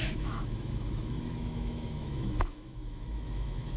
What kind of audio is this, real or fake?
fake